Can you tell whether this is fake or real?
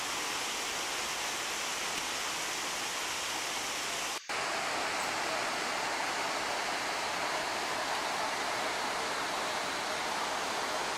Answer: real